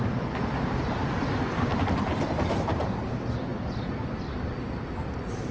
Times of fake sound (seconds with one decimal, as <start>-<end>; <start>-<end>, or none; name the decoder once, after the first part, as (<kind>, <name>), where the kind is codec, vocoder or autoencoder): 0.0-3.5 (vocoder, BigVGAN v2); 4.1-5.5